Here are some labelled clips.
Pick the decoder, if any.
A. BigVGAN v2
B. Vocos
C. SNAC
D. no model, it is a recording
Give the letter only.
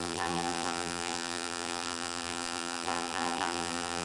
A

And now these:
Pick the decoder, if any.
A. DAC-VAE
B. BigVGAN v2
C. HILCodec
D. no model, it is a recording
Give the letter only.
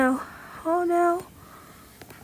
D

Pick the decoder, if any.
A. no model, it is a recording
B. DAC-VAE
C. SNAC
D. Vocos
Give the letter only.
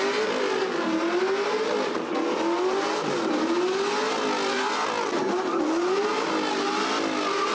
A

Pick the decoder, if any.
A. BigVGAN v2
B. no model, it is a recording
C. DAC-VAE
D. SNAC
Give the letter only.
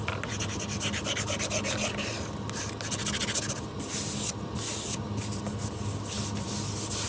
B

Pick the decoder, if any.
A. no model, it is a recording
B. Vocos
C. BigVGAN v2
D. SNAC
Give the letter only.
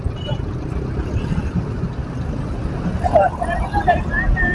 A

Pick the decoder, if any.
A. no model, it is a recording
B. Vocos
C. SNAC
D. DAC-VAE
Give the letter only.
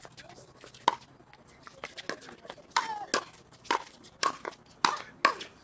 A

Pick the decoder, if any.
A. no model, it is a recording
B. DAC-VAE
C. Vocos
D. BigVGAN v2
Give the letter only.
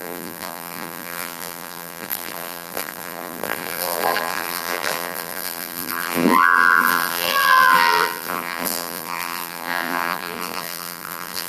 D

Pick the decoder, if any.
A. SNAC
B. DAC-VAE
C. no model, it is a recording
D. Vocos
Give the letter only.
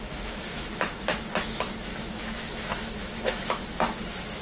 B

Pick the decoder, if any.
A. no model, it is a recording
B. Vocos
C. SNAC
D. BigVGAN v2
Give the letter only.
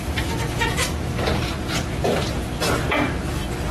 A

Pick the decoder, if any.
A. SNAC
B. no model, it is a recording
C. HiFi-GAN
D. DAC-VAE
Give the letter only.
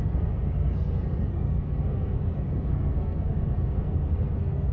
A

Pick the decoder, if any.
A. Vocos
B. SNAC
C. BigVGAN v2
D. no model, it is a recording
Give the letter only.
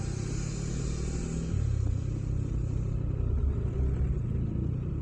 D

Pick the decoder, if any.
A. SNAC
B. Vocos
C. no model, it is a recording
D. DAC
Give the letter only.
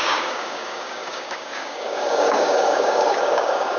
D